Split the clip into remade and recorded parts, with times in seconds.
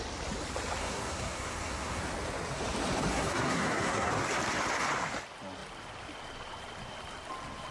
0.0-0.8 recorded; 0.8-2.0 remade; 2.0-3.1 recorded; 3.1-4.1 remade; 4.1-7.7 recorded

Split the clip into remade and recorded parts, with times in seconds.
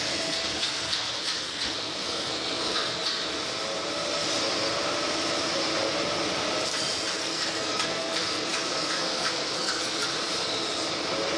0.0-3.0 remade; 3.0-7.2 recorded; 7.2-10.1 remade; 10.1-11.4 recorded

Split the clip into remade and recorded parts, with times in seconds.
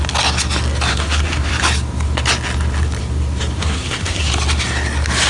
0.0-0.9 recorded; 0.9-1.5 remade; 1.5-3.6 recorded; 3.6-4.3 remade; 4.3-5.3 recorded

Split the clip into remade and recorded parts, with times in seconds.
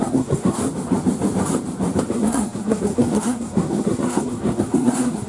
0.0-0.6 remade; 0.6-2.1 recorded; 2.1-5.3 remade